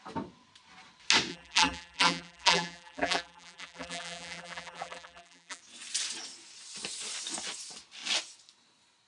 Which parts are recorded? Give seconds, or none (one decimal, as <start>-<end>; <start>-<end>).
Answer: 0.0-1.3; 5.6-9.1